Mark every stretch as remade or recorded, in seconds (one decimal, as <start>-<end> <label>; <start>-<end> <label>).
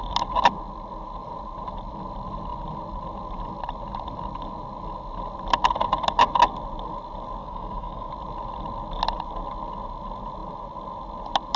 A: 0.0-7.4 recorded; 7.4-8.1 remade; 8.1-11.6 recorded